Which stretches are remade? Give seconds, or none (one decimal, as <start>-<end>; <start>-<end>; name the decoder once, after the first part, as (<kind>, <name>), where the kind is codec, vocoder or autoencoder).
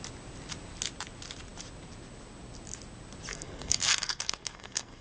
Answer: 3.3-5.0 (codec, SNAC)